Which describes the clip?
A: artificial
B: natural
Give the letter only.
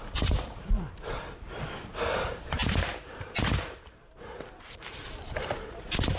A